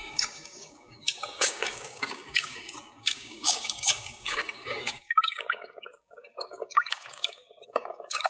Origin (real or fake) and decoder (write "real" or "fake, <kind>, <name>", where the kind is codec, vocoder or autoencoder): fake, codec, DAC